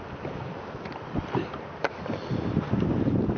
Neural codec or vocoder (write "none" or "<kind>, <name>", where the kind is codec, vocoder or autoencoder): none